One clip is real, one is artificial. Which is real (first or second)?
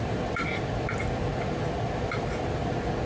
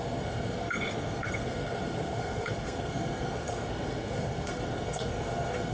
first